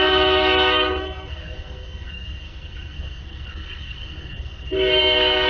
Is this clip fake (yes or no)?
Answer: yes